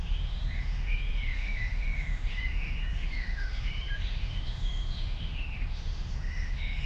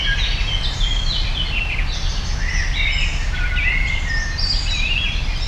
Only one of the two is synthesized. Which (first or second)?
first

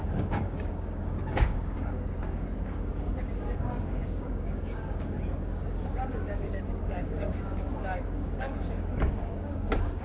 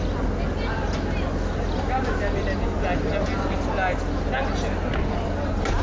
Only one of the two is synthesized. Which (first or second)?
first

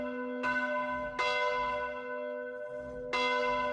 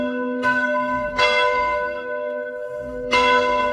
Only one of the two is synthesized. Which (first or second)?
second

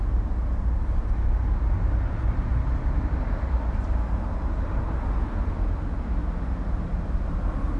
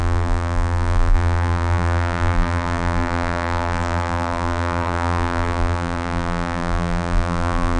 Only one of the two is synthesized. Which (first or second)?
second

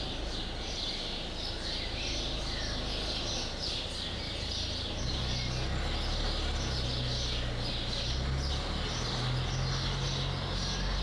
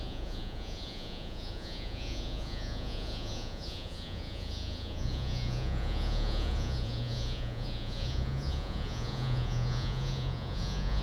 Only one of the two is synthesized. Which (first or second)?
second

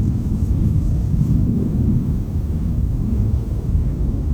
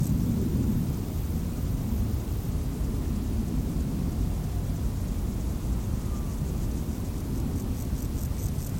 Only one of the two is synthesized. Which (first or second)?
first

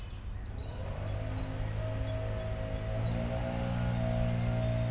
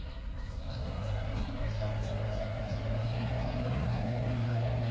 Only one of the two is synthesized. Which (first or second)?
second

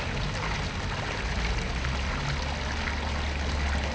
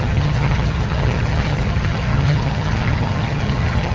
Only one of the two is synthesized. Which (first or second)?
second